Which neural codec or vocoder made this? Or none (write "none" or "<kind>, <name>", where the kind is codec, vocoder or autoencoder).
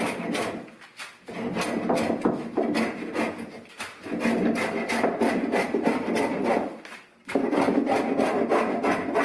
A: none